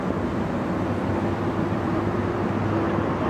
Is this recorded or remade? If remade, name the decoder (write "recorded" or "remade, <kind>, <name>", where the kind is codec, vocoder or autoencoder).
recorded